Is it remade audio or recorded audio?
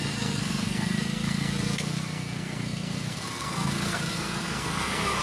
remade